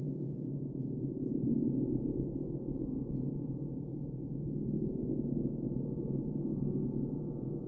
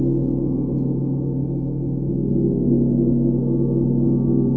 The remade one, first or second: first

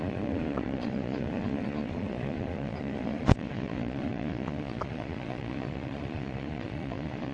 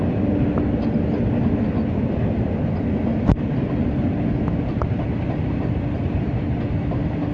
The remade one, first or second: first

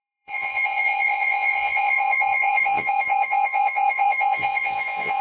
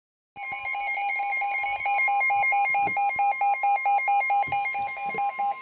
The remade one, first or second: first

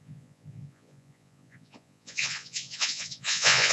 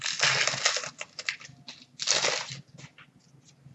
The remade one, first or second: first